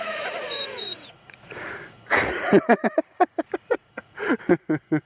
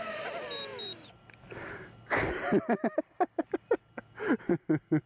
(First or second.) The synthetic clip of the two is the first